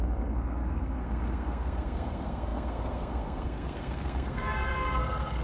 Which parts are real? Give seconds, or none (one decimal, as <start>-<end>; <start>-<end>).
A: none